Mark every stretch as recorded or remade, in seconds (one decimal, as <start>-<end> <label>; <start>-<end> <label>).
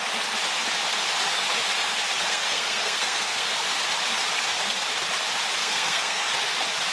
0.0-2.3 recorded; 2.3-3.5 remade; 3.5-5.6 recorded; 5.6-6.2 remade; 6.2-6.9 recorded